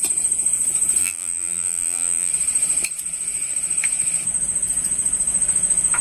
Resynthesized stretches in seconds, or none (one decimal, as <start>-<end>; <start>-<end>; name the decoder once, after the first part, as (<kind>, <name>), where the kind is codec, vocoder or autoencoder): 1.0-2.3 (vocoder, BigVGAN v2)